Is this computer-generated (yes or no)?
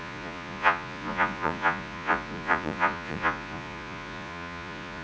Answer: yes